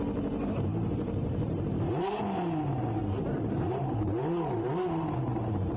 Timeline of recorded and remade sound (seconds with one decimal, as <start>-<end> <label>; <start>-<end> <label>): 0.0-0.7 recorded; 0.7-2.2 remade; 2.2-3.0 recorded; 3.0-5.8 remade